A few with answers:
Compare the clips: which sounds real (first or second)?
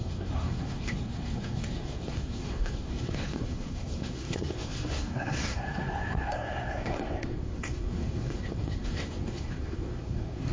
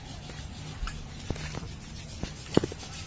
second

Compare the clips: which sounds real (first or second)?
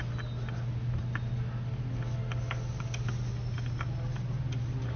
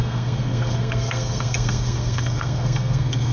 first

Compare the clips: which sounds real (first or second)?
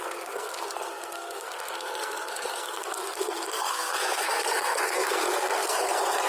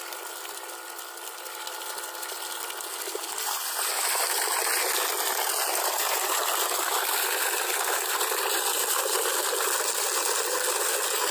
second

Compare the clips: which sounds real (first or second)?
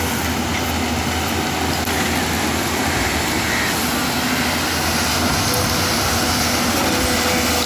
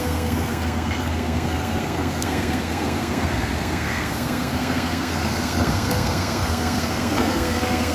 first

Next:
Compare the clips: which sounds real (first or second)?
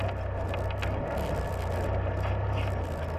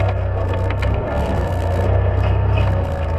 first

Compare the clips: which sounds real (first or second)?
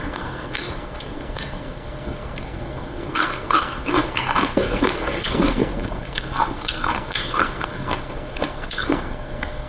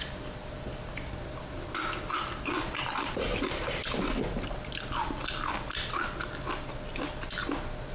second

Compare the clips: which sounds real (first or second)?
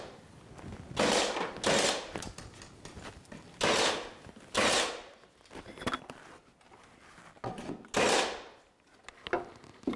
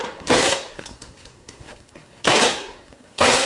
first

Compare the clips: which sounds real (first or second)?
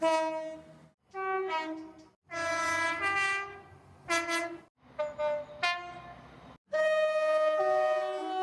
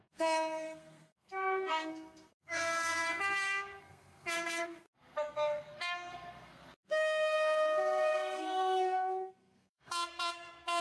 first